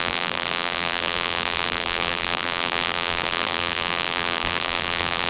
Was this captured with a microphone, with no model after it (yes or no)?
no